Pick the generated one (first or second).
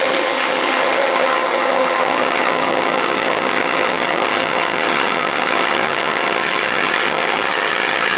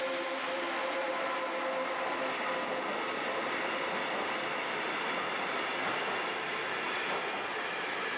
first